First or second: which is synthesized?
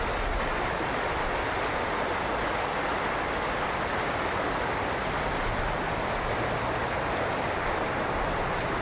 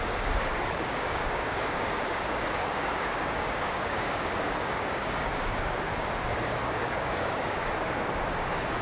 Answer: second